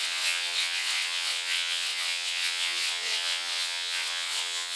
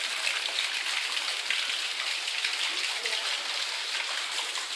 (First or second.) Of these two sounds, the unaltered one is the second